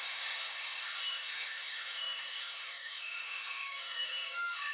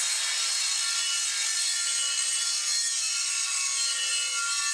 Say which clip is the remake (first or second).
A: first